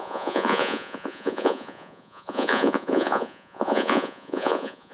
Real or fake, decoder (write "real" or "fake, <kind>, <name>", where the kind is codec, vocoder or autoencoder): fake, vocoder, Vocos